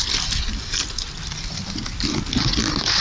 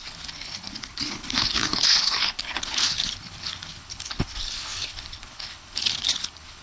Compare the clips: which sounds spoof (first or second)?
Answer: second